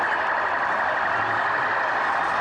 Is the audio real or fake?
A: real